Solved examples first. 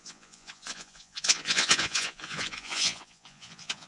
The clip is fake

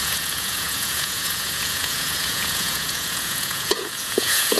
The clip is fake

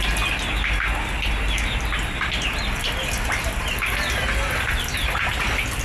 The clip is real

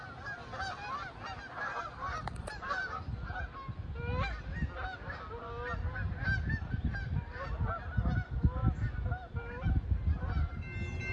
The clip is real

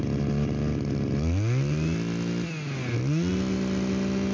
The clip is real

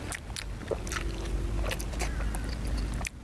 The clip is real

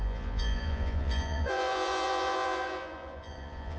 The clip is fake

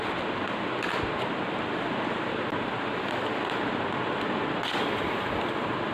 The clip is real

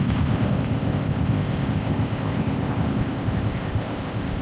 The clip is fake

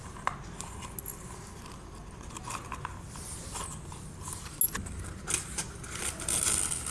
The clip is real